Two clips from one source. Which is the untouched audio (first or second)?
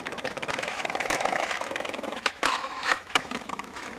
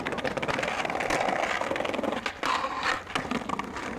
second